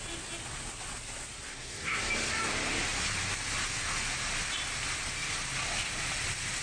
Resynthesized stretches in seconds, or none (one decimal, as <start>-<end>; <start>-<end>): 1.5-2.0